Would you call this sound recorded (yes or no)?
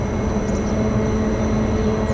yes